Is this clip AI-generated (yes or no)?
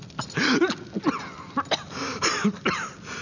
no